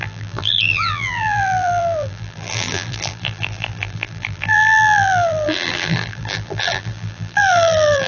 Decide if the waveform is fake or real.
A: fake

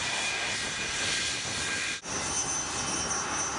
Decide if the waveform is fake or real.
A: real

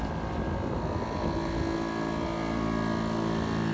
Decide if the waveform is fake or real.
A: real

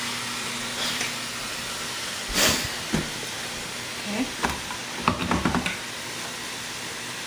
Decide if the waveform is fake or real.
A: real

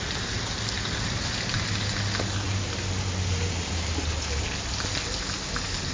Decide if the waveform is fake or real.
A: fake